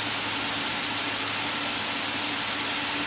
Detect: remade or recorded recorded